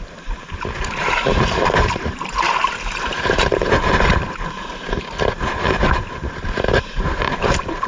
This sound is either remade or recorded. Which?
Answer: remade